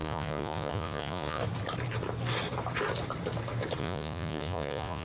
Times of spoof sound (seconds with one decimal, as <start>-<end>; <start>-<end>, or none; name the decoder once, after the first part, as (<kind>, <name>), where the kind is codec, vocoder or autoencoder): 0.0-1.4 (vocoder, Vocos); 3.8-5.0